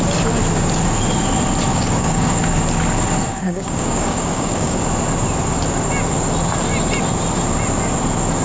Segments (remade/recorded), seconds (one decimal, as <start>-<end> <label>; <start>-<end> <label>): 0.0-1.7 recorded; 1.7-2.3 remade; 2.3-3.3 recorded; 3.3-4.8 remade; 4.8-8.4 recorded